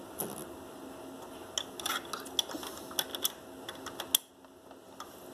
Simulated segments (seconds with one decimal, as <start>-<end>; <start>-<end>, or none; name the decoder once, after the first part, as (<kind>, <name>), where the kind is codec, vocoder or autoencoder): none